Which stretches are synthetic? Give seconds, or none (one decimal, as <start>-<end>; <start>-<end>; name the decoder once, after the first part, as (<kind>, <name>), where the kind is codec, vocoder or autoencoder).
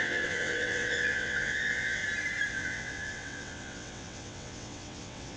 0.0-2.0 (vocoder, WaveNeXt); 2.5-5.4